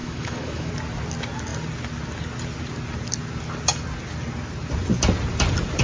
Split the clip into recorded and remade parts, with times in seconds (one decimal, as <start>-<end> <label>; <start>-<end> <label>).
0.0-0.7 remade; 0.7-5.8 recorded